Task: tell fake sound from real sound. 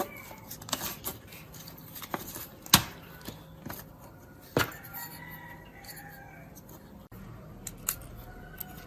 real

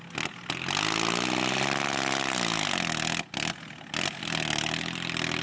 real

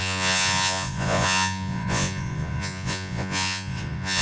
fake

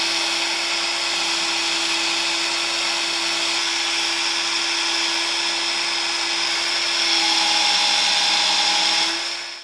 real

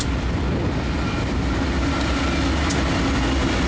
real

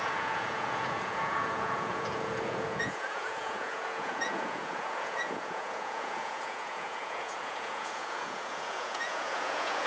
fake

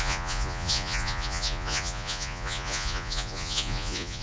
fake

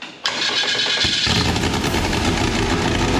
real